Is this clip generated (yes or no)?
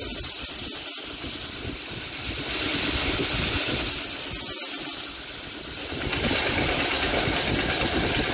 no